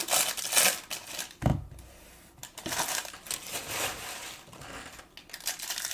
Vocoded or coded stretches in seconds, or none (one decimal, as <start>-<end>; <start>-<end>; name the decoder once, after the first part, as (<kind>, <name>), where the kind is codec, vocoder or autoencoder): 1.5-5.0 (vocoder, BigVGAN v2)